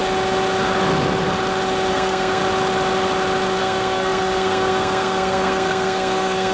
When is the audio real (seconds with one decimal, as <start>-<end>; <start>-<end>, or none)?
0.0-1.9; 2.4-3.6